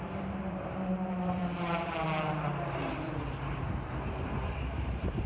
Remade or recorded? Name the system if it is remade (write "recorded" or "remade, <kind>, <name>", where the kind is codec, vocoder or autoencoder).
remade, vocoder, BigVGAN v2